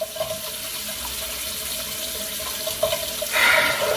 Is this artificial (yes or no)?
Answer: no